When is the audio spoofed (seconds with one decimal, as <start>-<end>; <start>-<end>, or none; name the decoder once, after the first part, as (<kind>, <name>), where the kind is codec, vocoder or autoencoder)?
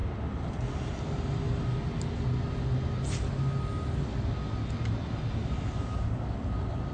5.4-6.2 (vocoder, BigVGAN v2)